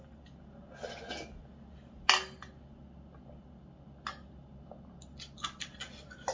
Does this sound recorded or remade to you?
recorded